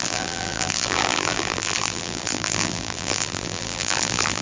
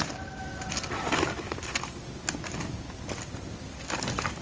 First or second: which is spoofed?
first